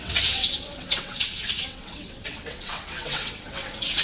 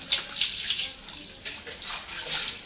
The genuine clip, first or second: second